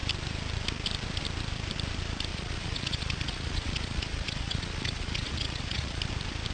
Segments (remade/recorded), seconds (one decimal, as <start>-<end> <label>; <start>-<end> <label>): 0.0-2.3 recorded; 2.3-6.0 remade; 6.0-6.5 recorded